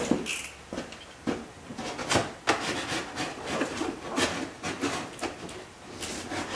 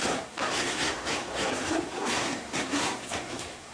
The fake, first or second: second